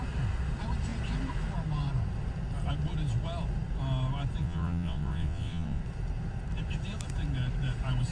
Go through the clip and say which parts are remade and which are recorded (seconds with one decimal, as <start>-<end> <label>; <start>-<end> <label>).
0.0-4.4 recorded; 4.4-5.8 remade; 5.8-8.1 recorded